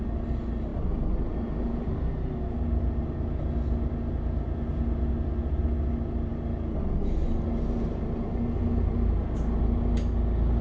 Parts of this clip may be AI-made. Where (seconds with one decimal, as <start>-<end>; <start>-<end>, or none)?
none